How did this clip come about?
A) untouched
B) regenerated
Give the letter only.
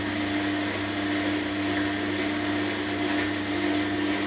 A